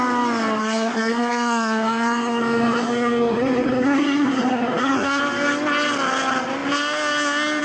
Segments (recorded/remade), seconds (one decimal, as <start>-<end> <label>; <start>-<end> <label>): 0.0-0.6 recorded; 0.6-5.2 remade; 5.2-7.6 recorded